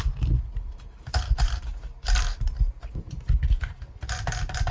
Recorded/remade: recorded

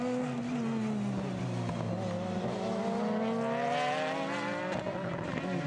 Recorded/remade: recorded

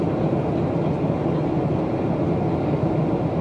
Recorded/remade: recorded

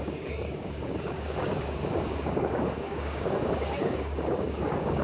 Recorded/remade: remade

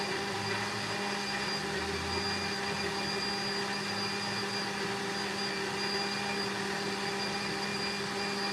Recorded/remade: recorded